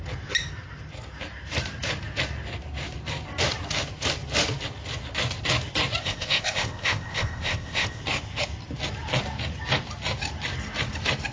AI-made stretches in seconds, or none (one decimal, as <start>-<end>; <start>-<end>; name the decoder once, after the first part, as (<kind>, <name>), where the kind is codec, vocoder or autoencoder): 6.0-8.0 (codec, ZipCodec)